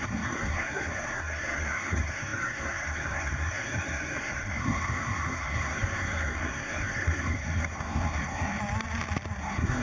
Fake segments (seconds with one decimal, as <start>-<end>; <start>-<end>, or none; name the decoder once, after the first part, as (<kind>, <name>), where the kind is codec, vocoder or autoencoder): 0.0-8.6 (codec, SNAC); 9.4-9.8